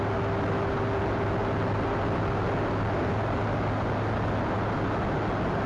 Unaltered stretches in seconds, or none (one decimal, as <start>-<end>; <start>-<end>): 0.0-5.7